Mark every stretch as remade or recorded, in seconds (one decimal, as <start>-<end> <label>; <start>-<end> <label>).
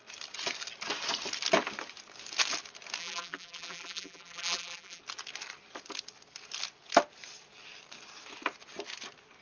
0.0-3.0 recorded; 3.0-5.0 remade; 5.0-9.4 recorded